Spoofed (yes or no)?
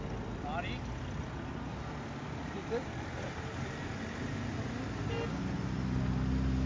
no